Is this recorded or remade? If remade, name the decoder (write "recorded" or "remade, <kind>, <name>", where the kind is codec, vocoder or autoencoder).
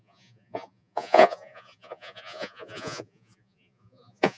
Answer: remade, vocoder, Vocos